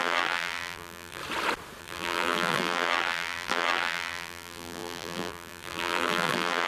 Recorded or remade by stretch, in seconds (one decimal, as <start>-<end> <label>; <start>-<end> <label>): 0.0-1.2 remade; 1.2-1.8 recorded; 1.8-6.7 remade